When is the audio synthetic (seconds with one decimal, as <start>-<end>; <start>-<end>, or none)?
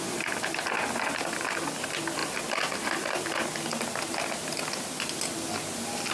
none